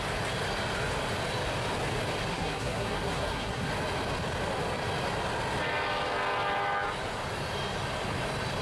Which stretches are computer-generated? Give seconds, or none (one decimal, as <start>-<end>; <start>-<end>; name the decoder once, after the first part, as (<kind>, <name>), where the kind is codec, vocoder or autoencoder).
2.3-3.7 (codec, SNAC)